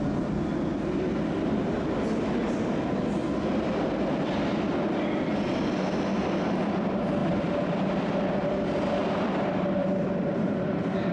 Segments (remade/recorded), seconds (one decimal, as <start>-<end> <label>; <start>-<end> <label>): 0.0-3.2 recorded; 3.2-4.6 remade; 4.6-7.2 recorded; 7.2-8.2 remade; 8.2-9.0 recorded; 9.0-11.1 remade